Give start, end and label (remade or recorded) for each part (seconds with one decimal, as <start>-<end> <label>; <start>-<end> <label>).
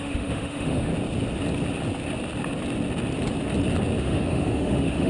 0.0-0.9 remade; 0.9-4.0 recorded; 4.0-5.1 remade